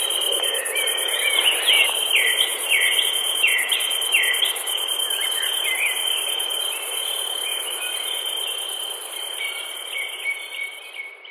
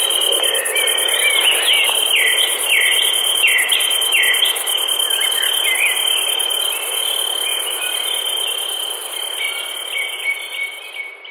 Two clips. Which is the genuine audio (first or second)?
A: second